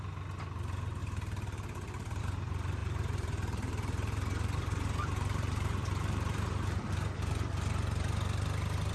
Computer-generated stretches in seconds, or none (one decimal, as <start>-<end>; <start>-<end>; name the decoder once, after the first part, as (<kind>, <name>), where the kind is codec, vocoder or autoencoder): 1.0-2.2 (vocoder, BigVGAN v2); 2.8-7.4